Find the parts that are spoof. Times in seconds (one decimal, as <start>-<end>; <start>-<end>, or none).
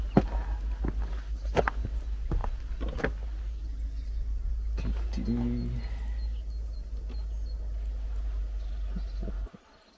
none